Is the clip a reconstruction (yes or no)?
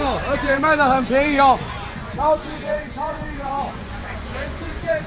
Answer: yes